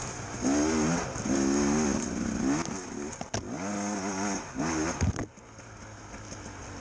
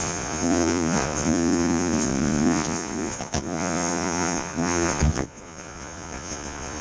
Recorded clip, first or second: first